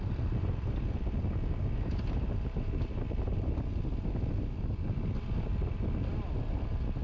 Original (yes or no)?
yes